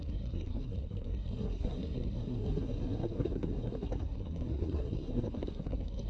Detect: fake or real fake